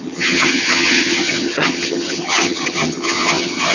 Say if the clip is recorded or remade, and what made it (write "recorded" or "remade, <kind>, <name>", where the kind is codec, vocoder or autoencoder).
remade, vocoder, HiFi-GAN